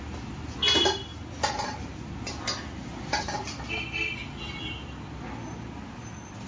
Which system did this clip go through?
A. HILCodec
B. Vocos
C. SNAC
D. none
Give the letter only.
D